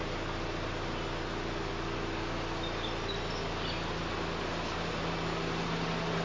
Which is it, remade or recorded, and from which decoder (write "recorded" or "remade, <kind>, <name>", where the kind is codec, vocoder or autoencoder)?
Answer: recorded